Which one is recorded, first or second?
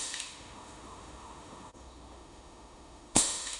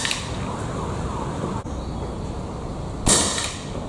second